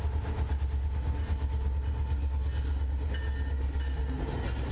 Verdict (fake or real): real